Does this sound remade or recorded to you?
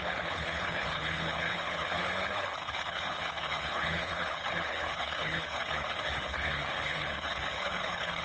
remade